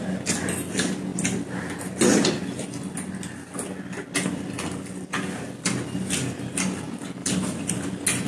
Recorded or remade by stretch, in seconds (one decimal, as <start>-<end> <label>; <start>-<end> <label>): 0.0-7.2 recorded; 7.2-7.7 remade; 7.7-8.3 recorded